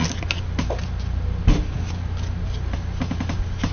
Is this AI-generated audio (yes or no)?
no